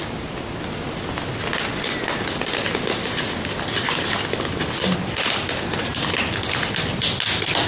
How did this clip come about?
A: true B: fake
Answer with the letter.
A